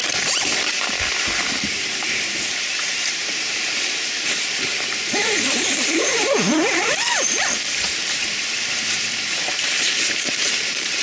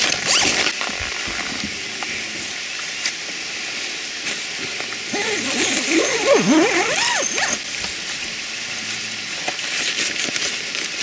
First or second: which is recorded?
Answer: second